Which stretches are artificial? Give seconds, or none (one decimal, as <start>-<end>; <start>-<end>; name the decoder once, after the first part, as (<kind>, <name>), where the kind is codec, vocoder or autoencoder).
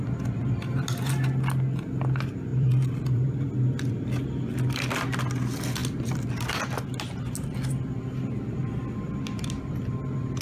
2.5-3.9 (vocoder, BigVGAN v2)